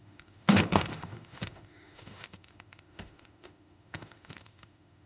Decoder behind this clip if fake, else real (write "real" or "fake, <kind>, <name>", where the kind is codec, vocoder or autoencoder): fake, autoencoder, DAC-VAE